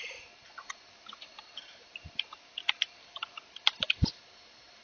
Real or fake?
real